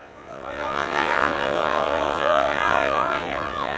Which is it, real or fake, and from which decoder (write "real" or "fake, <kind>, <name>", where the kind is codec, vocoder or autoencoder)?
fake, vocoder, WaveNeXt